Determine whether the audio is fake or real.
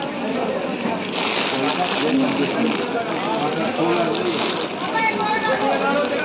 real